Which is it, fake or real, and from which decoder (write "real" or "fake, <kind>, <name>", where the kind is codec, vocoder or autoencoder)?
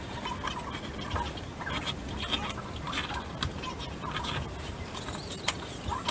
real